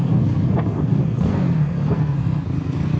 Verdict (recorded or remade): remade